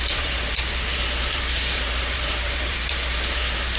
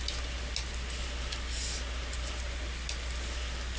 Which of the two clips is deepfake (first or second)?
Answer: first